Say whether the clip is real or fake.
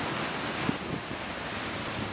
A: real